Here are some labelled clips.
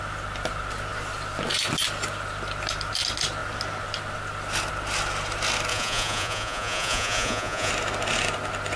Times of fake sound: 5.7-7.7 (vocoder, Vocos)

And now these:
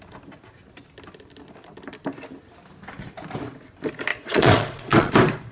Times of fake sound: 4.1-5.1 (vocoder, Vocos)

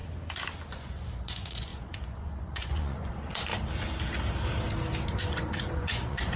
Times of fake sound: 0.7-3.5 (vocoder, Vocos); 5.2-6.4

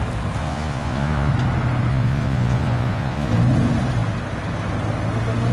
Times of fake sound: 0.4-1.3 (vocoder, Vocos); 1.9-3.3

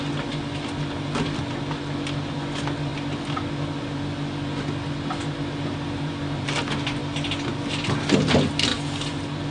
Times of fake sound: none